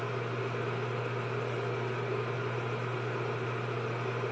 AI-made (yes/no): no